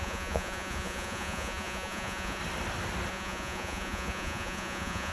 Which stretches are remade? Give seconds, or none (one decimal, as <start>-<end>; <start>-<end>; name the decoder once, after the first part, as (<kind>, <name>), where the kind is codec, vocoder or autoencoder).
0.0-2.4 (vocoder, Vocos); 3.1-5.1